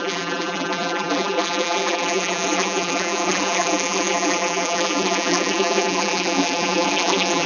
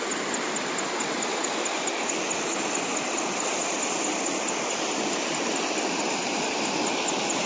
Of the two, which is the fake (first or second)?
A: first